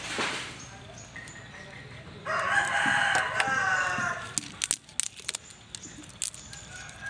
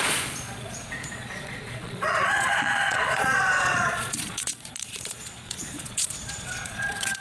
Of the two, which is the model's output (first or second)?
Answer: second